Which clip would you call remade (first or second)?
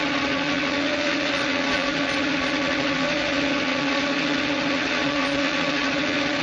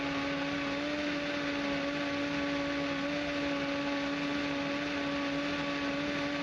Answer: first